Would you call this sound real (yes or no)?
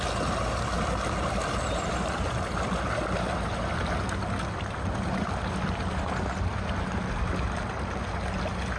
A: yes